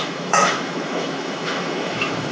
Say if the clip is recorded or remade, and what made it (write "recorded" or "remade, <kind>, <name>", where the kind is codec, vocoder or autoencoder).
remade, autoencoder, DAC-VAE